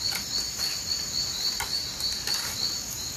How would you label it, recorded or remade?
recorded